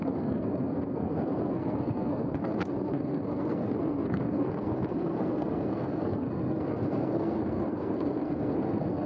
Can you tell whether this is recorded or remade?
remade